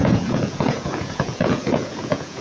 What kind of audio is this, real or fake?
fake